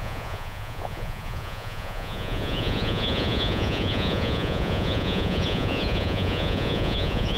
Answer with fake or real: fake